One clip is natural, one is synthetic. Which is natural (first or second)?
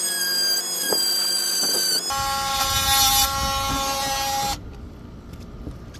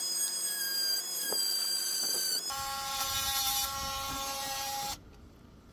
first